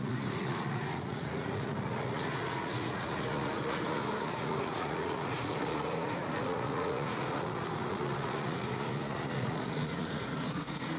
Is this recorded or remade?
remade